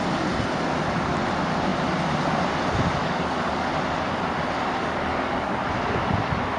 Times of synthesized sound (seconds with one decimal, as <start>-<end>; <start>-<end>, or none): 3.0-3.7; 4.8-5.7